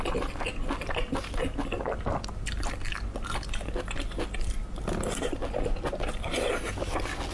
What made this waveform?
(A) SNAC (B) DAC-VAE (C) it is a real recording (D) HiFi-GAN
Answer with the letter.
C